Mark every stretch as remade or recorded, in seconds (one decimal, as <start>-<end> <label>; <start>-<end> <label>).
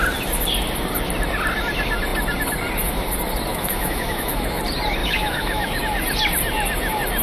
0.0-3.5 recorded; 3.5-4.6 remade; 4.6-5.0 recorded; 5.0-5.8 remade; 5.8-7.2 recorded